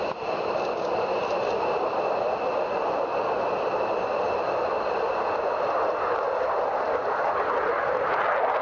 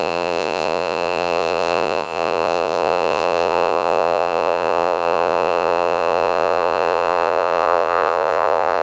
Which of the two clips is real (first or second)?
first